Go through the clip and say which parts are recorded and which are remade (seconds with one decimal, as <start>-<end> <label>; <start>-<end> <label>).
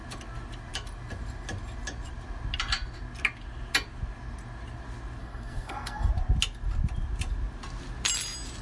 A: 0.0-5.2 recorded; 5.2-6.1 remade; 6.1-8.6 recorded